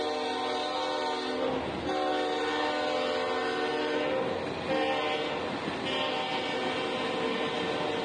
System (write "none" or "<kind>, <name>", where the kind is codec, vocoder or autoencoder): none